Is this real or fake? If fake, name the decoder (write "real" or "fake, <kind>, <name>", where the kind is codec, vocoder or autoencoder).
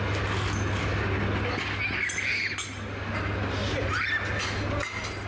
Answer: real